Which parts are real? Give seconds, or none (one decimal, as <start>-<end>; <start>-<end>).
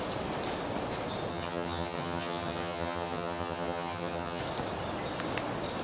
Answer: 0.0-1.3; 4.4-5.8